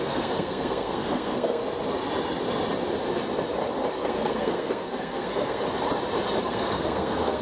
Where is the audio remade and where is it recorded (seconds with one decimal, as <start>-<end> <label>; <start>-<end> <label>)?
0.0-1.6 remade; 1.6-4.0 recorded; 4.0-5.6 remade; 5.6-6.4 recorded; 6.4-7.4 remade